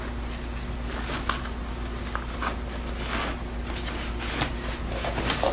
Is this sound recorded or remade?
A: recorded